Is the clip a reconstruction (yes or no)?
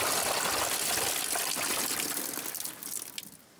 no